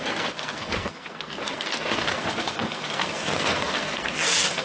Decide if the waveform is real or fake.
fake